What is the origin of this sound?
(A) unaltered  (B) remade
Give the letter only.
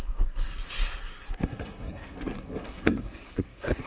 B